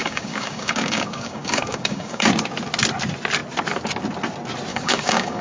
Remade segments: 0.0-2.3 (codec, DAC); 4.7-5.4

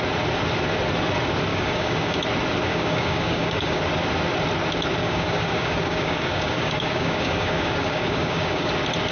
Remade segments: 1.5-2.2 (codec, DAC); 2.7-3.8; 5.0-8.7